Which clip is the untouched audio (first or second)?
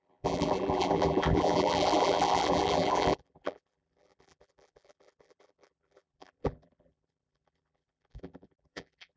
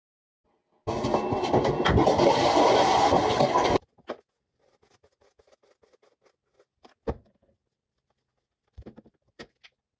second